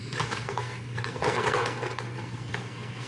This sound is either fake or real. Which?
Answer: fake